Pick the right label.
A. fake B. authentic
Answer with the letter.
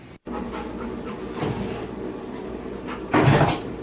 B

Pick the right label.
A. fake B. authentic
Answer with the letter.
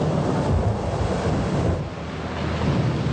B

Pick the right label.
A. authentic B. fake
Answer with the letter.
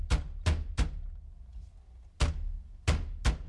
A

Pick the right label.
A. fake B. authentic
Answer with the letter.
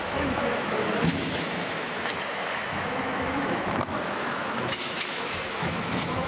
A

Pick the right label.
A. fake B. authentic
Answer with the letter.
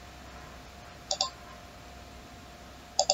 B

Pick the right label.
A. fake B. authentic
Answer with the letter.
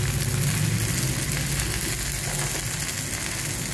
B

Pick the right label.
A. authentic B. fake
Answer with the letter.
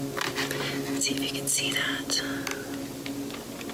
A